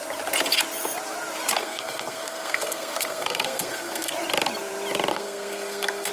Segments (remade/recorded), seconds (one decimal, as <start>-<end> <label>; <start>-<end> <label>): 0.0-1.6 recorded; 1.6-4.1 remade; 4.1-5.1 recorded; 5.1-6.1 remade